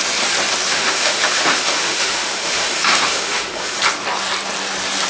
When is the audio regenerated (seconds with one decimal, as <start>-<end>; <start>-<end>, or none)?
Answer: 0.7-3.8